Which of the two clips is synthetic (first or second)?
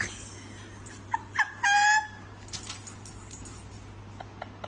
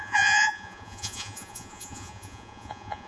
second